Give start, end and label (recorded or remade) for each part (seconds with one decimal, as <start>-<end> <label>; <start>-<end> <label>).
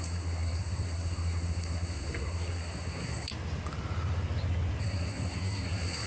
0.0-3.3 remade; 3.3-4.8 recorded; 4.8-6.1 remade